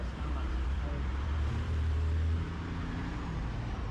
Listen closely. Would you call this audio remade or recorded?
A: remade